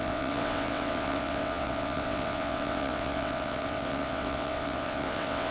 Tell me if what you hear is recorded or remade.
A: remade